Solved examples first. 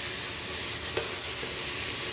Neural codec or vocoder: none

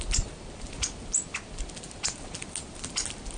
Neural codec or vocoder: none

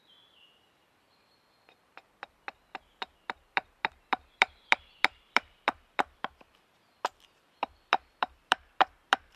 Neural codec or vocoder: vocoder, BigVGAN v2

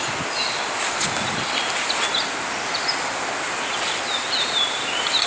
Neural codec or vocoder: none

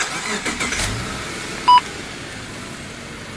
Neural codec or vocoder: none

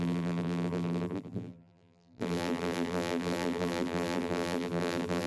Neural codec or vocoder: vocoder, BigVGAN v2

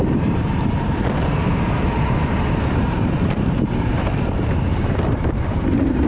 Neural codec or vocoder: vocoder, BigVGAN v2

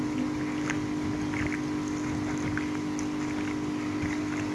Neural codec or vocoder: none